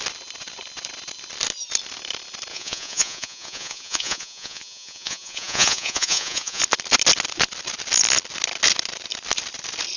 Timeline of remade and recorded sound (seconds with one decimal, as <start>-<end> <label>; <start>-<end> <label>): 0.0-2.5 recorded; 2.5-6.6 remade; 6.6-10.0 recorded

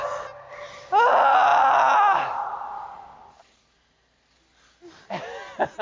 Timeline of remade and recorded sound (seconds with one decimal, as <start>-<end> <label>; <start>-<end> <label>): 0.0-5.8 recorded

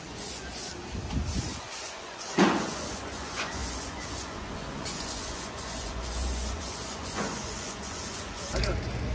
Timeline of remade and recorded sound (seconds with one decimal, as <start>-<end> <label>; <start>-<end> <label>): 0.0-0.7 remade; 0.7-1.3 recorded; 1.3-9.1 remade

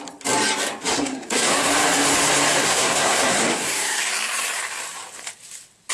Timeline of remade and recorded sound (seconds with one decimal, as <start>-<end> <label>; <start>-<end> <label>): 0.0-0.9 recorded; 0.9-1.7 remade; 1.7-2.6 recorded; 2.6-4.0 remade; 4.0-5.9 recorded

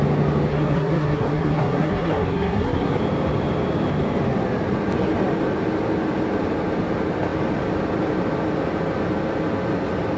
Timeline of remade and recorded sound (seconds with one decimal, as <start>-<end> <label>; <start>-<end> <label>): 0.0-0.5 recorded; 0.5-3.0 remade; 3.0-10.2 recorded

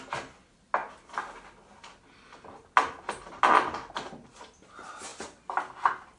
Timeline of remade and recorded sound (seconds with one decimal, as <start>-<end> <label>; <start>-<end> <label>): 0.0-6.2 recorded